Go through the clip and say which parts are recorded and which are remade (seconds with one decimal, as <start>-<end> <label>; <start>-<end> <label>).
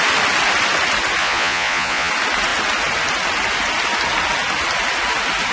0.0-1.2 recorded; 1.2-2.1 remade; 2.1-5.5 recorded